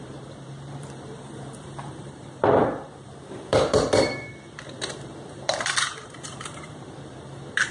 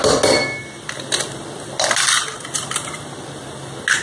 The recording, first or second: second